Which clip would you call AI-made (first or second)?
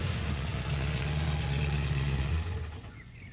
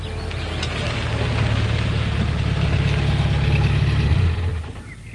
first